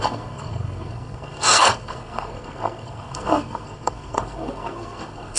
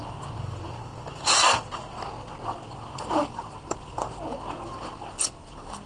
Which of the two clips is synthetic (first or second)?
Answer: first